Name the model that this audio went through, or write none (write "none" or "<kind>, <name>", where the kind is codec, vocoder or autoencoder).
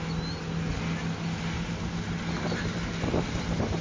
none